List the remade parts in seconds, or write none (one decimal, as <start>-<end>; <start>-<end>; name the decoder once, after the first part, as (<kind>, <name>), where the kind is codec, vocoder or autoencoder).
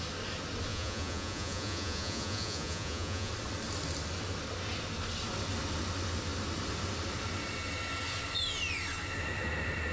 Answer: 0.7-3.3 (vocoder, Vocos)